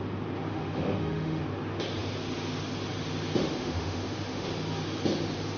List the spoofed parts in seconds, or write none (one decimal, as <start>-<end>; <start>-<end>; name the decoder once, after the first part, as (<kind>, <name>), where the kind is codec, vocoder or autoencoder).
0.5-1.4 (autoencoder, DAC-VAE); 3.4-4.5